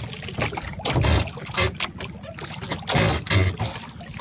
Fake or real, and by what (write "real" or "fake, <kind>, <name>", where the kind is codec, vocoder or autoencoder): real